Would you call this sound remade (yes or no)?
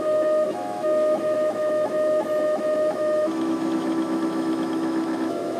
yes